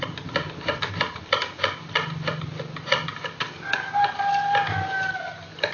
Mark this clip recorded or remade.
remade